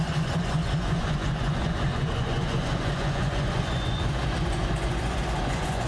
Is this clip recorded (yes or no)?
no